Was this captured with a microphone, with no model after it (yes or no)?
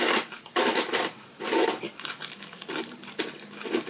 no